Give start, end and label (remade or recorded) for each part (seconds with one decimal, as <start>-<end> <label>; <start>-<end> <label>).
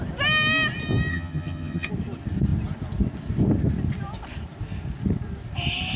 0.0-1.1 recorded; 1.1-1.9 remade; 1.9-6.0 recorded